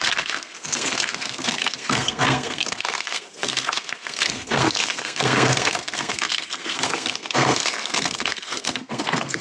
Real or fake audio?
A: fake